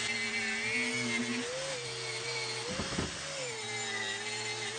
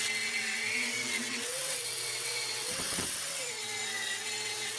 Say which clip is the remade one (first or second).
second